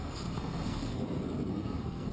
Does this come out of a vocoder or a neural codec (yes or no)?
yes